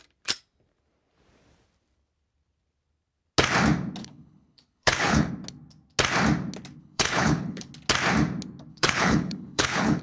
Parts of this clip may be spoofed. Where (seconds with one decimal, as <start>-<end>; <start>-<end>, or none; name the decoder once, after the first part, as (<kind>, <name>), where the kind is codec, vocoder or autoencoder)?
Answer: 4.0-5.3 (codec, HILCodec); 6.8-7.7; 8.7-10.0